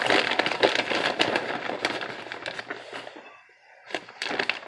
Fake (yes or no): no